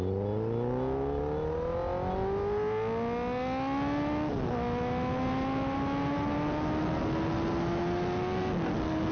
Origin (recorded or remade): recorded